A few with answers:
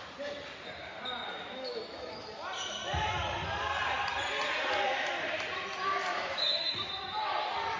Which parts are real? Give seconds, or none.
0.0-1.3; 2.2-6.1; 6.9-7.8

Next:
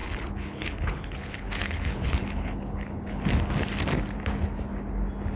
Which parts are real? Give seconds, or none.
3.2-5.4